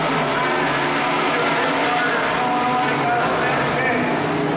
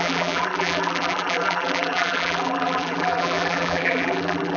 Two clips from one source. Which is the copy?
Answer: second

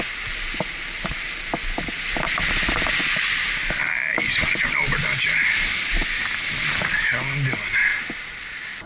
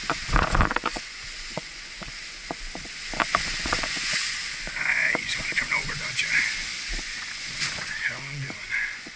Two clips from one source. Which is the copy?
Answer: second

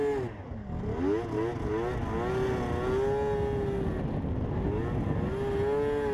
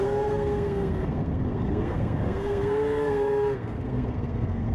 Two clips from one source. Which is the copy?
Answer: second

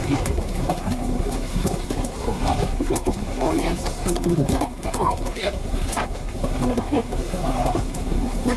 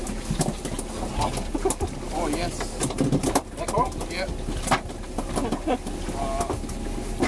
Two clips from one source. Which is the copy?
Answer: first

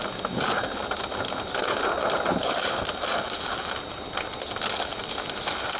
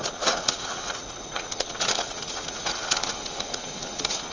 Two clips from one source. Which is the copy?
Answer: second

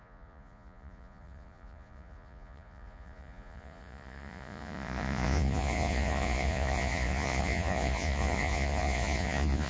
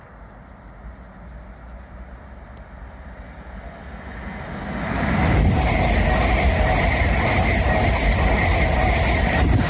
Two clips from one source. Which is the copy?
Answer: first